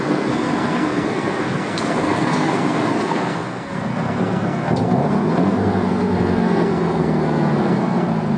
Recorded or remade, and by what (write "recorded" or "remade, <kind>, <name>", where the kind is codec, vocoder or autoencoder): remade, codec, SNAC